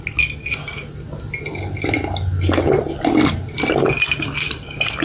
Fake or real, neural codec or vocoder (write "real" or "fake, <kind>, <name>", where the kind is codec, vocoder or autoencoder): real